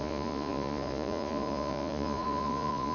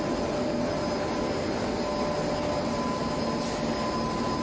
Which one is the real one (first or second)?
second